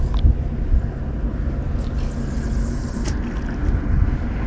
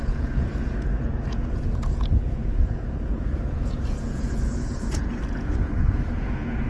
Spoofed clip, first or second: second